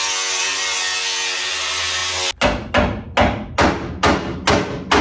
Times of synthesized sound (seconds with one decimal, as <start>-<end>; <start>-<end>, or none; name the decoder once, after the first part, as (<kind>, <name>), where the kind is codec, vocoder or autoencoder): none